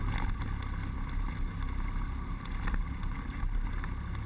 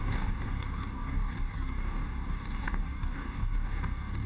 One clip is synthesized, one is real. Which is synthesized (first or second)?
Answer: second